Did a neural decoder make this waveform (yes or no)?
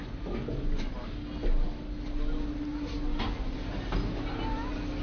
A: no